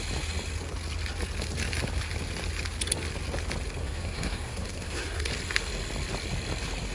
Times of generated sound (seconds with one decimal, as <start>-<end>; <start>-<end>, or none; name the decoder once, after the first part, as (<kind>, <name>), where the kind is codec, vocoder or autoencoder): 3.8-5.3 (codec, SNAC)